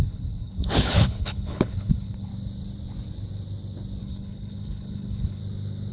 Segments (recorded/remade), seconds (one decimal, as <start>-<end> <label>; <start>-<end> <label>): 0.0-2.3 remade; 2.3-4.0 recorded; 4.0-5.4 remade; 5.4-5.9 recorded